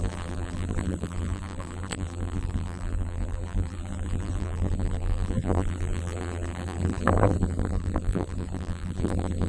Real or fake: fake